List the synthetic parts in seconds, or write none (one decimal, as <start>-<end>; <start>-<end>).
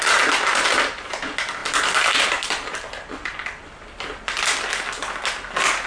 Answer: none